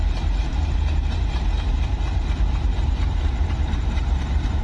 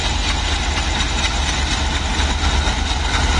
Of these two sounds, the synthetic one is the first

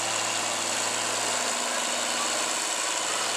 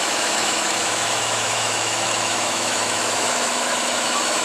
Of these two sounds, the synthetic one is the second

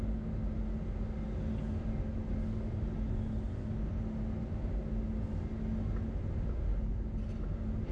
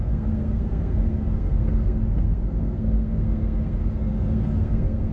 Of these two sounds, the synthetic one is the second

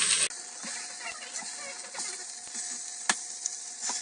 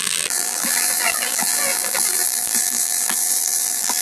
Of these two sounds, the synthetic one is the second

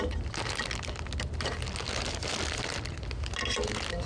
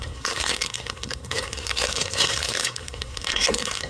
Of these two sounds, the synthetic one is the second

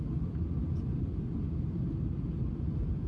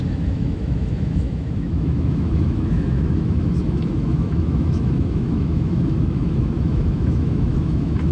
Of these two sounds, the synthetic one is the second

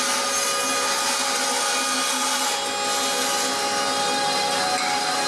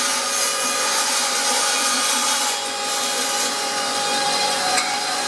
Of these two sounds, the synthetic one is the second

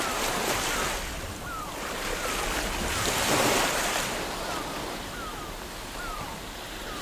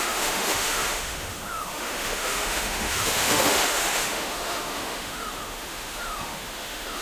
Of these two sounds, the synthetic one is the second